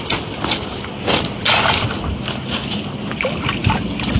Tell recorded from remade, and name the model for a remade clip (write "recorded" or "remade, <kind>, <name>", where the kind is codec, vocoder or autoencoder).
recorded